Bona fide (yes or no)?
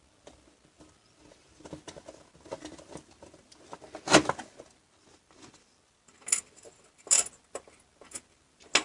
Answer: yes